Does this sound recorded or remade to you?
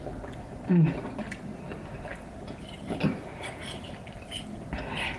recorded